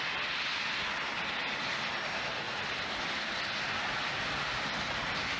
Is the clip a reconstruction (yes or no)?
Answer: no